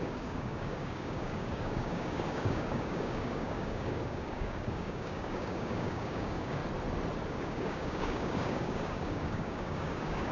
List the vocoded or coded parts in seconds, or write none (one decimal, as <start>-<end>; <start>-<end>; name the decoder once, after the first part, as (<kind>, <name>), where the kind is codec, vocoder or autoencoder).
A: 0.0-6.6 (codec, DAC); 7.3-10.3